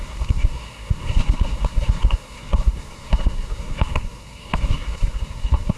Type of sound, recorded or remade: remade